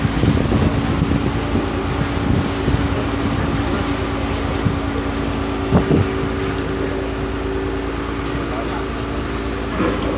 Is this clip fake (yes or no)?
no